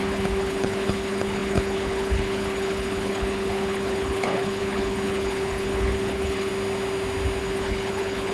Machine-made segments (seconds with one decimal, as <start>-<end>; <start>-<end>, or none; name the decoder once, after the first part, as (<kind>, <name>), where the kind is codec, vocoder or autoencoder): 0.0-6.5 (codec, HILCodec); 7.4-8.3